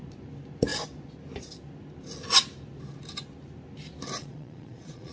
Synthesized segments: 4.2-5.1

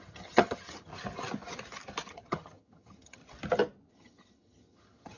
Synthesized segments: 0.0-0.9; 2.1-3.2; 3.9-5.2

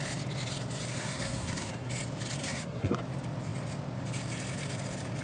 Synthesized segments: 0.9-1.9; 2.4-3.0

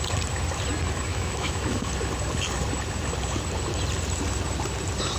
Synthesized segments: 1.1-1.9

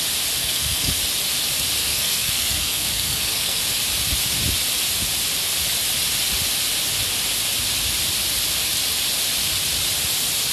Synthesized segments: 0.4-1.0; 1.8-3.6

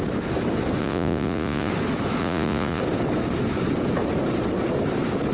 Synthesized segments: 0.8-1.7; 2.2-2.8